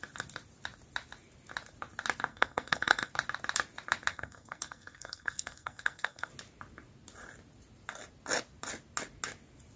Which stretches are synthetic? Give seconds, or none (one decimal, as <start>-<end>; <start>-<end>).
2.3-3.1; 4.1-6.3